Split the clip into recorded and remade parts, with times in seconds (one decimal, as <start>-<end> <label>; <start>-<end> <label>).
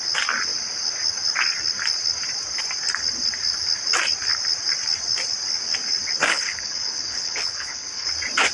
0.0-6.3 recorded; 6.3-8.1 remade; 8.1-8.5 recorded